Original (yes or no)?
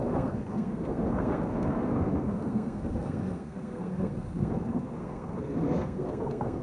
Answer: no